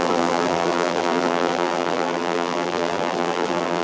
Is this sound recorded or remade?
remade